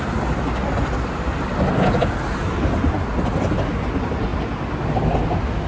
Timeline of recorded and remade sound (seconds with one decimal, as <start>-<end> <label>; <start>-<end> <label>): 0.0-5.7 recorded